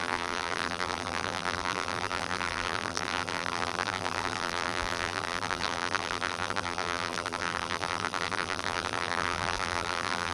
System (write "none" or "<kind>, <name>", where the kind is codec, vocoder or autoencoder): vocoder, BigVGAN v2